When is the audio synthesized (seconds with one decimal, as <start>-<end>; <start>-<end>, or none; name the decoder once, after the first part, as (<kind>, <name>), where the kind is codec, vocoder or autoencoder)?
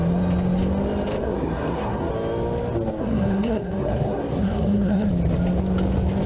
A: 1.2-2.1 (codec, SNAC); 3.0-5.1